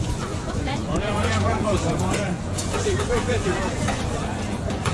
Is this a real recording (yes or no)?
no